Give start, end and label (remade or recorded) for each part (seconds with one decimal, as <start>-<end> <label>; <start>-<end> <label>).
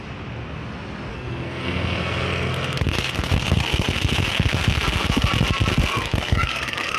0.0-1.1 recorded; 1.1-5.3 remade; 5.3-5.7 recorded; 5.7-7.0 remade